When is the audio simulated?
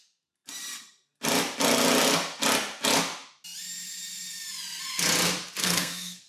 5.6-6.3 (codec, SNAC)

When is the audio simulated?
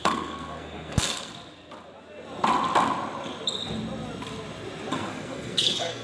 0.0-1.3 (codec, SNAC); 4.9-6.0